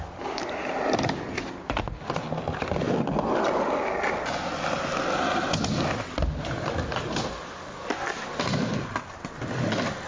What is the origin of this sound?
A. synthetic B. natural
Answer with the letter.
B